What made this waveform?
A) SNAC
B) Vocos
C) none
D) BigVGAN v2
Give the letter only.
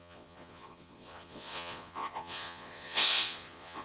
B